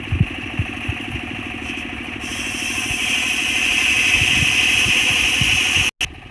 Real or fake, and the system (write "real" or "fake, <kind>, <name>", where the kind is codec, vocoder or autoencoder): real